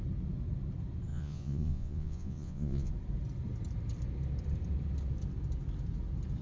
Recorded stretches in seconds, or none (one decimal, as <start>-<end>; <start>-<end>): 0.0-1.1; 2.9-6.4